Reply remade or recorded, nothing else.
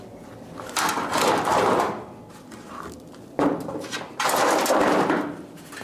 recorded